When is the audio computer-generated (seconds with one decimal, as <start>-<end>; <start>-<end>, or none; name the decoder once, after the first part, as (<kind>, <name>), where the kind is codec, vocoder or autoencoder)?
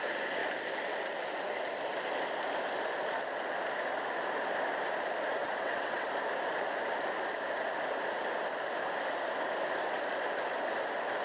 5.4-6.1 (vocoder, WaveNeXt)